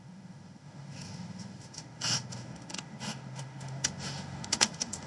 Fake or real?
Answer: fake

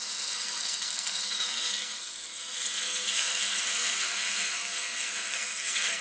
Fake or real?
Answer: fake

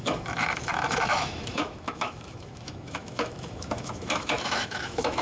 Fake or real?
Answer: fake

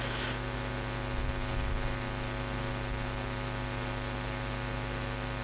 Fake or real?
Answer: real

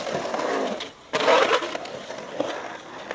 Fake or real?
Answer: real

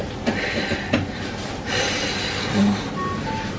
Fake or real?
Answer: real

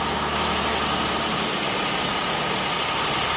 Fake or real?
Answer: real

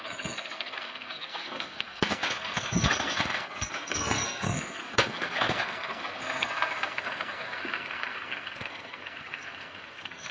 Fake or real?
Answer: fake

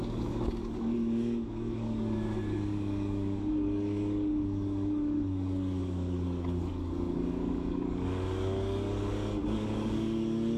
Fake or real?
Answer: fake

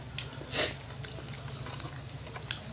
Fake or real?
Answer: real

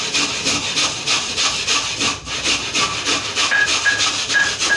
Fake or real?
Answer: real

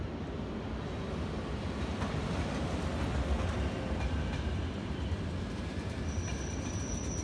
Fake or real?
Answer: real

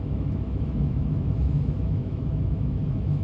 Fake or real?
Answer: fake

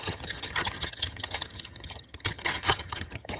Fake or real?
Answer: fake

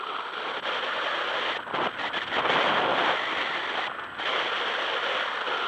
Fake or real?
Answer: real